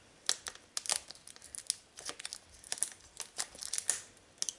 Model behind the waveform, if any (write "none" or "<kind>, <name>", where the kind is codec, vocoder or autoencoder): none